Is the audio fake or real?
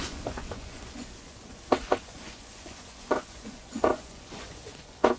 fake